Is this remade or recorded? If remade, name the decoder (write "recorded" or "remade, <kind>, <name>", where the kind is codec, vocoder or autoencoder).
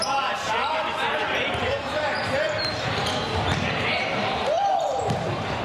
remade, vocoder, BigVGAN v2